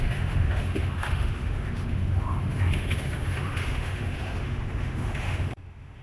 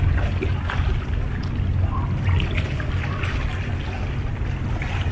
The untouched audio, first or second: second